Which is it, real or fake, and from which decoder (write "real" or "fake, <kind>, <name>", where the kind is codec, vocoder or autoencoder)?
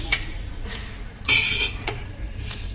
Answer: fake, vocoder, Vocos